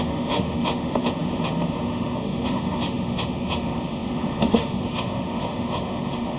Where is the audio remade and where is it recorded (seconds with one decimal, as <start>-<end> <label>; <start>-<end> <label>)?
0.0-6.4 remade